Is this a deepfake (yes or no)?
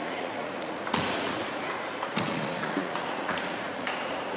yes